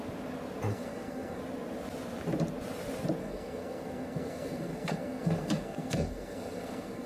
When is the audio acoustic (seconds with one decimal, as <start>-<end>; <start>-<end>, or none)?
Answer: 0.0-0.7; 1.4-3.2